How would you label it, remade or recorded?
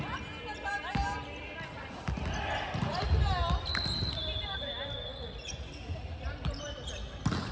recorded